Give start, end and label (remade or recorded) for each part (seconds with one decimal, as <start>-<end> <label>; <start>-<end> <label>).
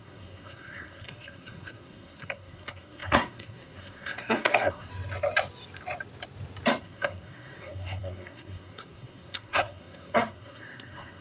0.0-4.9 remade; 4.9-6.8 recorded; 6.8-11.2 remade